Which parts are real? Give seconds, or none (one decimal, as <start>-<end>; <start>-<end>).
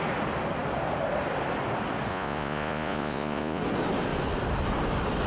0.0-2.1; 3.6-5.3